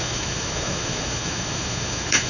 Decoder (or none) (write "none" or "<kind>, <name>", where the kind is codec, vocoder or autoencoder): autoencoder, DAC-VAE